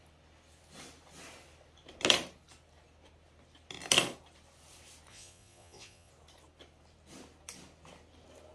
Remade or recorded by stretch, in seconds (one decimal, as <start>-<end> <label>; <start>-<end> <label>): 0.0-5.1 recorded; 5.1-6.1 remade; 6.1-8.5 recorded